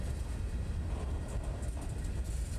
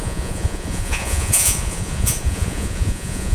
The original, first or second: first